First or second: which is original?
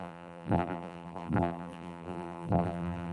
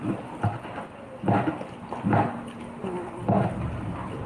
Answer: second